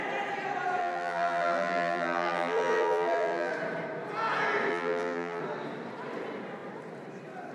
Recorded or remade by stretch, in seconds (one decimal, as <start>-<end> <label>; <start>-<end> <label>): 0.0-0.8 recorded; 0.8-3.5 remade; 3.5-4.7 recorded; 4.7-5.4 remade; 5.4-7.5 recorded

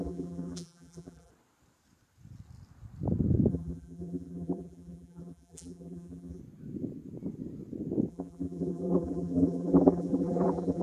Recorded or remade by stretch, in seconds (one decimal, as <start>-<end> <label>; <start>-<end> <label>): 0.0-1.3 remade; 1.3-3.5 recorded; 3.5-6.4 remade; 6.4-8.1 recorded; 8.1-10.8 remade

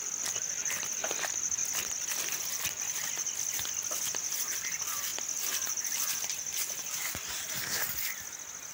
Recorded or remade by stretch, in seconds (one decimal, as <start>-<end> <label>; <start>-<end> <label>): 0.0-1.6 remade; 1.6-2.4 recorded; 2.4-2.9 remade; 2.9-4.4 recorded; 4.4-5.1 remade; 5.1-8.7 recorded

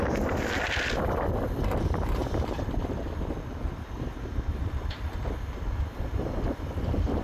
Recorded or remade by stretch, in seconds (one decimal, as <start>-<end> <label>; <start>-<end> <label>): 0.0-2.2 recorded; 2.2-3.6 remade; 3.6-7.2 recorded

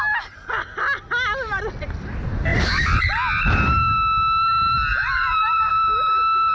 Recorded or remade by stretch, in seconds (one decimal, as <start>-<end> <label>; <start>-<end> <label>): 0.0-2.5 recorded; 2.5-3.1 remade; 3.1-4.9 recorded; 4.9-5.7 remade; 5.7-6.5 recorded